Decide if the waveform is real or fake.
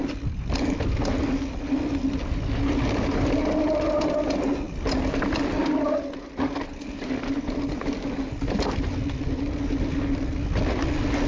real